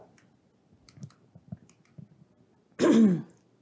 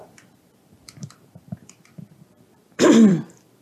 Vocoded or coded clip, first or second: second